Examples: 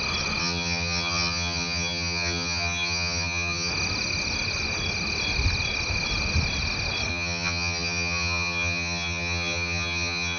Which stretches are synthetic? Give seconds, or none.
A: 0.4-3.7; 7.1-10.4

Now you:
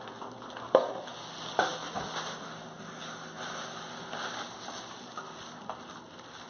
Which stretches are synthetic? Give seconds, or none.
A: none

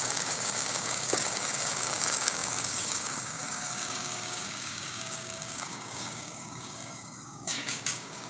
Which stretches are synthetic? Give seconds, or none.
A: 0.0-8.3